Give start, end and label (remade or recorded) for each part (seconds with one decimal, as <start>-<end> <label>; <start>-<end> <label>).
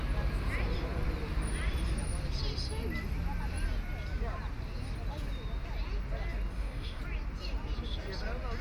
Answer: 0.0-6.5 recorded; 6.5-7.0 remade; 7.0-8.6 recorded